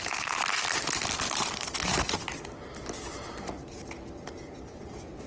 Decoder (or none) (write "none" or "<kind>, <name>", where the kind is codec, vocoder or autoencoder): none